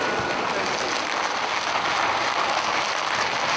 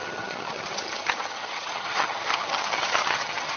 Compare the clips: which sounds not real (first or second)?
second